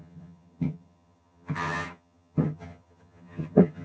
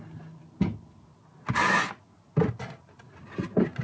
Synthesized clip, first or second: first